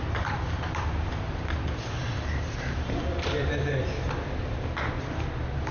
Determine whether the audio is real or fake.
real